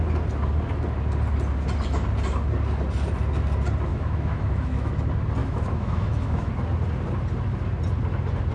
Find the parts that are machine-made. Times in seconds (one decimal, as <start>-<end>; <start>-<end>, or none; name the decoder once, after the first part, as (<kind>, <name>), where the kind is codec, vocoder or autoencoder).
3.9-4.9 (autoencoder, DAC-VAE); 5.4-6.5